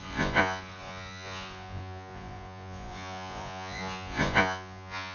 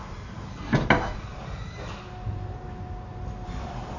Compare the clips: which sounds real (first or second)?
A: second